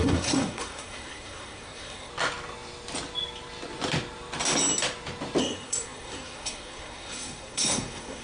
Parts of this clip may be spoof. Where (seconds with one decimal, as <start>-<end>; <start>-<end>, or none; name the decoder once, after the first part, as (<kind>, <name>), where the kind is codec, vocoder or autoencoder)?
0.0-2.1 (codec, SNAC); 5.4-8.2